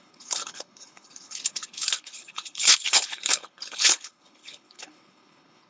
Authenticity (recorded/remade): remade